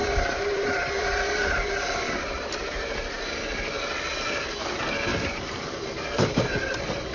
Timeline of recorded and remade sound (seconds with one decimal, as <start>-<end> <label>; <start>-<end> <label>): 0.0-3.5 remade; 3.5-5.1 recorded; 5.1-7.1 remade